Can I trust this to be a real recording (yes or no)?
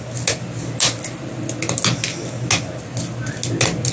yes